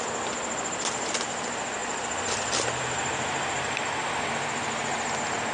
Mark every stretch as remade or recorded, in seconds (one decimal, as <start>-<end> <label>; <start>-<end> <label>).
0.0-1.8 recorded; 1.8-5.1 remade; 5.1-5.5 recorded